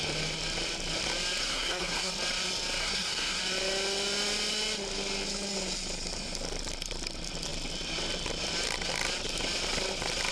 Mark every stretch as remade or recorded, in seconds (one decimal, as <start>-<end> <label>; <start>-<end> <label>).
0.0-1.4 recorded; 1.4-2.1 remade; 2.1-2.8 recorded; 2.8-3.4 remade; 3.4-10.3 recorded